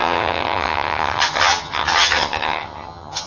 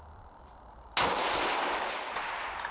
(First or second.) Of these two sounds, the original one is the second